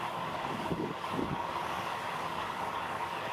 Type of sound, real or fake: fake